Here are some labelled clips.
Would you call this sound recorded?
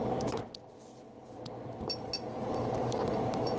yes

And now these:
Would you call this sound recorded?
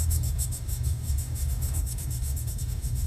no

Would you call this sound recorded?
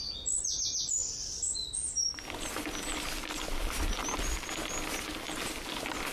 yes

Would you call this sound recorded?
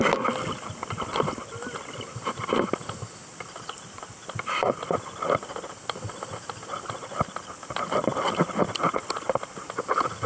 yes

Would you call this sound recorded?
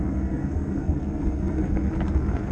no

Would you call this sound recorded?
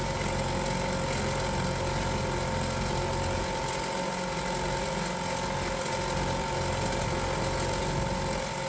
yes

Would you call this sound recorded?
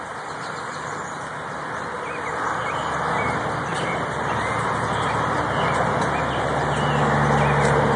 yes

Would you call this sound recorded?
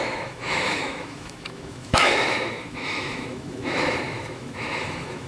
no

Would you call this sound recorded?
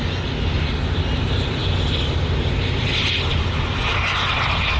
yes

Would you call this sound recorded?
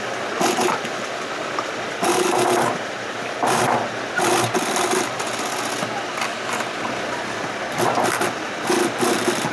yes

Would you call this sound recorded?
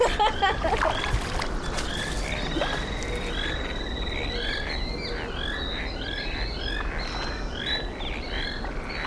yes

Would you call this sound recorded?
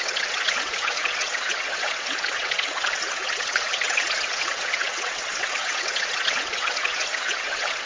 no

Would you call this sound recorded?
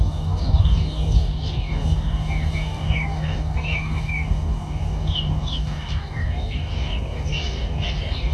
no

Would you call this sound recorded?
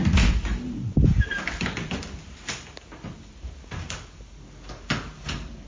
yes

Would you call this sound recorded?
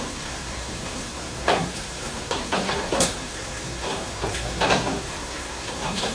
no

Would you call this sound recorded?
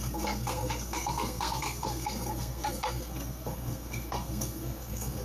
no